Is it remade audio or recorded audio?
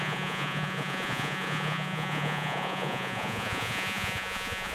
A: remade